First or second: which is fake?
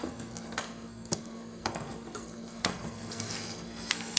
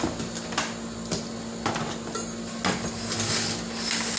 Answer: first